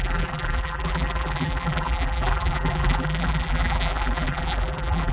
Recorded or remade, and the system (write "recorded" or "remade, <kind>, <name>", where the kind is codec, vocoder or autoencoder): remade, vocoder, BigVGAN v2